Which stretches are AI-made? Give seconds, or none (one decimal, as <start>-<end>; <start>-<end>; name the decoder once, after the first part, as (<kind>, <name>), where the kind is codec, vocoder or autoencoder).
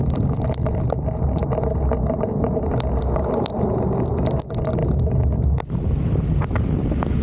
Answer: none